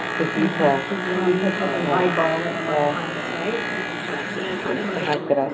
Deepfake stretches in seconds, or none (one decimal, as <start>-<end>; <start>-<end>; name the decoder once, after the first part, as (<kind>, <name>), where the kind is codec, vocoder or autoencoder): 4.0-5.5 (codec, HILCodec)